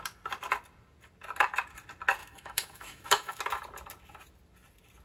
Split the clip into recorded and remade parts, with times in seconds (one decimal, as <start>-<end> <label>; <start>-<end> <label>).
0.0-2.2 recorded; 2.2-3.4 remade; 3.4-5.0 recorded